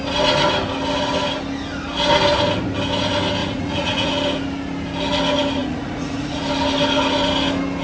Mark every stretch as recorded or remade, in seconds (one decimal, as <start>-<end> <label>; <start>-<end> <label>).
0.0-3.4 recorded; 3.4-4.1 remade; 4.1-5.6 recorded; 5.6-6.4 remade; 6.4-7.8 recorded